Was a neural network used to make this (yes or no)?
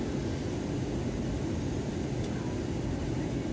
no